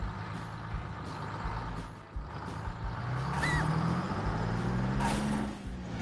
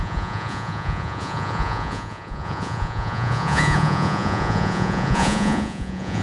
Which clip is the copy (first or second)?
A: second